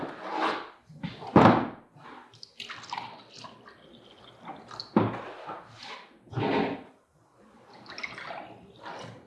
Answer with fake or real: real